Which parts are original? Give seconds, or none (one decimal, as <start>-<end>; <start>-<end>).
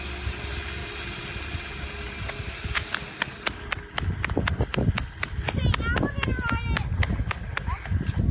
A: 0.0-8.3